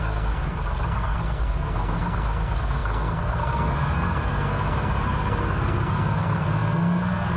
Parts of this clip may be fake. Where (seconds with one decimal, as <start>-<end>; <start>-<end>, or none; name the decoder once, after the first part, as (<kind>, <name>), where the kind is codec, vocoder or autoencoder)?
0.0-7.4 (codec, SNAC)